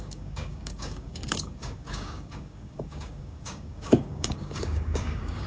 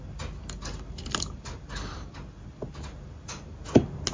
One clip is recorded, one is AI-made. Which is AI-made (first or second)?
first